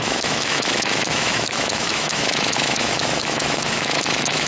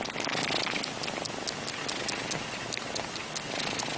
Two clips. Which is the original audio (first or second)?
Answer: second